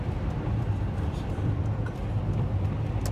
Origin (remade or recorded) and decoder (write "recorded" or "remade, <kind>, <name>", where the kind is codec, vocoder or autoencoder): recorded